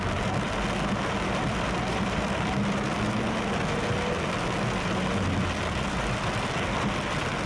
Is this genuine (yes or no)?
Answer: yes